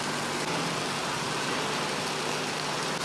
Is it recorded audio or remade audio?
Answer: recorded